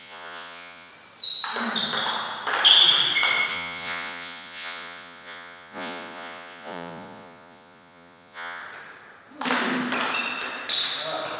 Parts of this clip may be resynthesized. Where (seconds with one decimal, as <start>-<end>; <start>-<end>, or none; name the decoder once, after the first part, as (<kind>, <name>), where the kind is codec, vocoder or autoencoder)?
0.0-0.9 (vocoder, Vocos); 3.5-8.6